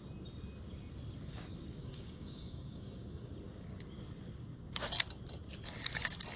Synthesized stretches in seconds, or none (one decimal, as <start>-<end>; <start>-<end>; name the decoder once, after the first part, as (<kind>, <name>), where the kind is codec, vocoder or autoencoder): 1.8-3.3 (codec, DAC)